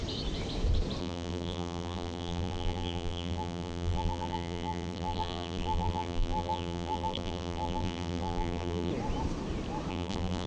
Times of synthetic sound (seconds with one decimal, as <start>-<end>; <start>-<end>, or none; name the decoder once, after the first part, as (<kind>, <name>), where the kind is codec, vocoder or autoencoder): 1.0-8.9 (vocoder, BigVGAN v2); 9.9-10.5